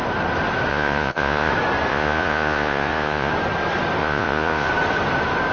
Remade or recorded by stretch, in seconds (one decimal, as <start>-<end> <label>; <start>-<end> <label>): 0.0-0.7 recorded; 0.7-1.5 remade; 1.5-1.9 recorded; 1.9-3.3 remade; 3.3-4.0 recorded; 4.0-4.7 remade; 4.7-5.5 recorded